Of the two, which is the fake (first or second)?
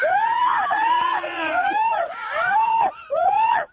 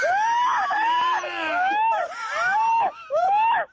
first